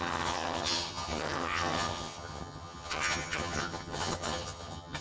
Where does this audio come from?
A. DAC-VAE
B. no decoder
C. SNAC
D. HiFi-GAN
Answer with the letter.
D